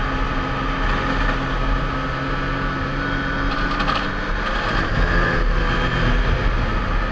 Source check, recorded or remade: recorded